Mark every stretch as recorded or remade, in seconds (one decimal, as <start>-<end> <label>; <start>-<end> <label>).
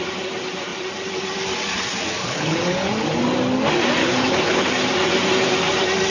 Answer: 0.0-2.2 recorded; 2.2-2.9 remade; 2.9-4.0 recorded; 4.0-4.7 remade; 4.7-6.1 recorded